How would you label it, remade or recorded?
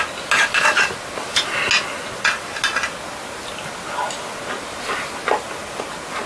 recorded